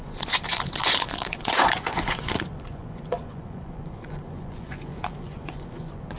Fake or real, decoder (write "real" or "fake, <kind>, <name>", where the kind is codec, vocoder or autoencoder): fake, vocoder, Vocos